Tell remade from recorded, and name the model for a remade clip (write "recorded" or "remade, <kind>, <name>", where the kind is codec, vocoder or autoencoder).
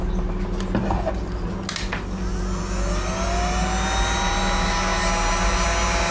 recorded